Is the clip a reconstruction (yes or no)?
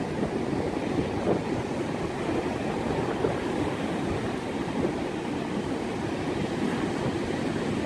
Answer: no